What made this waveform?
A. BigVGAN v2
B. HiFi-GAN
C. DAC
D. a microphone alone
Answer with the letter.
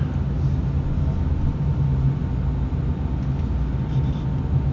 D